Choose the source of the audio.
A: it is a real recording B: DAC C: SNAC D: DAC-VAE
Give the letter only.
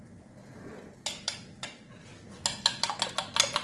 A